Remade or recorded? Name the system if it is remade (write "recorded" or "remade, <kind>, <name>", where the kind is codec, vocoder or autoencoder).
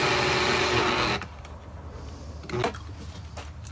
recorded